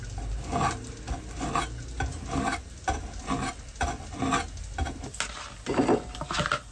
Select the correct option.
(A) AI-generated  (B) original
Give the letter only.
B